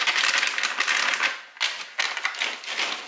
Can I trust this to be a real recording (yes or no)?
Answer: yes